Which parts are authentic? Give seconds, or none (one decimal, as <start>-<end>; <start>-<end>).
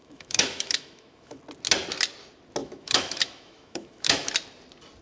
1.4-2.6; 4.3-5.0